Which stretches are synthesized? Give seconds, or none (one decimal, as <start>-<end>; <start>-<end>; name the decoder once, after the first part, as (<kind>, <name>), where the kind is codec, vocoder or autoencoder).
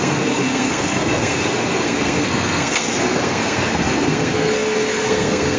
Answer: 0.0-5.6 (codec, SNAC)